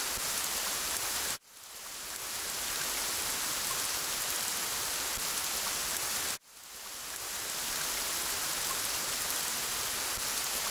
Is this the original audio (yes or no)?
yes